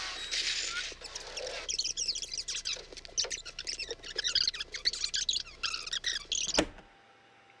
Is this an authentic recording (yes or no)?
yes